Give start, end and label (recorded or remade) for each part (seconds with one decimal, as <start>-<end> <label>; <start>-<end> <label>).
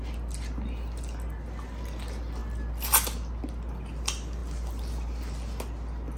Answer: 0.0-6.2 recorded